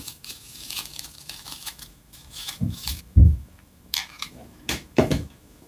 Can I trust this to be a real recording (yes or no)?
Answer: no